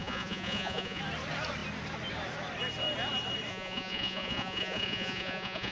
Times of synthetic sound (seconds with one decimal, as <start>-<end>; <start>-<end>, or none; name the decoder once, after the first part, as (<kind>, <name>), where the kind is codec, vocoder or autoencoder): 0.0-1.0 (vocoder, Vocos); 3.5-5.7